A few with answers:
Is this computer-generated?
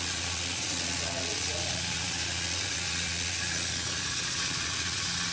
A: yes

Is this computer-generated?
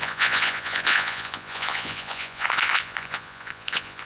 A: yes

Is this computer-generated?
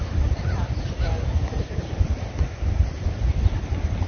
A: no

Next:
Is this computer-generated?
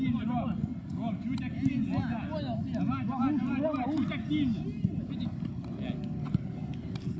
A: no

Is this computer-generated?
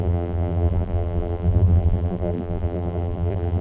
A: yes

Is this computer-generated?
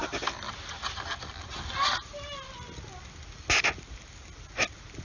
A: no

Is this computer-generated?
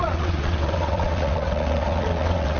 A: yes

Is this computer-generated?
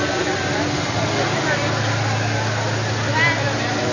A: no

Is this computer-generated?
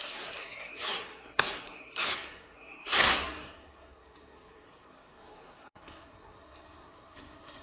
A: yes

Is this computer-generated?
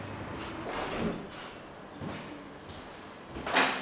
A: no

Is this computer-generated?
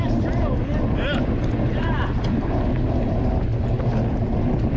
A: no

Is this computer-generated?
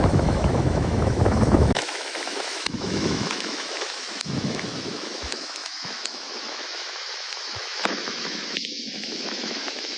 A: yes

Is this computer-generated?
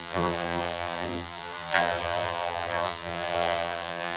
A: yes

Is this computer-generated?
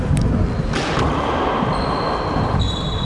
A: no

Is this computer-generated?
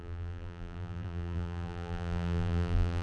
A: yes